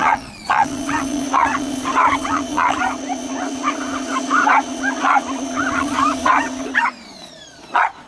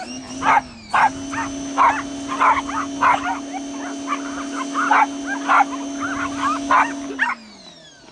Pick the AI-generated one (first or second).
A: first